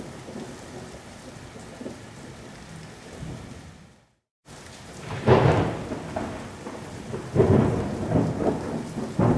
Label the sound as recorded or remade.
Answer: recorded